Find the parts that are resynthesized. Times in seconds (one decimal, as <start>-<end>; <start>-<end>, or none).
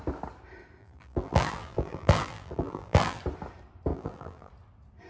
0.8-3.2; 3.9-4.5